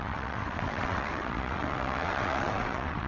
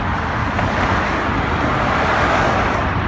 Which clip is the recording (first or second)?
second